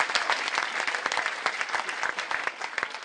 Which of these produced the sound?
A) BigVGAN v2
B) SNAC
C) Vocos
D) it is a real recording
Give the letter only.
D